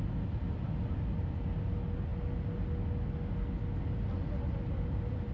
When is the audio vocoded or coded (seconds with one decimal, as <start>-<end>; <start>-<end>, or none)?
none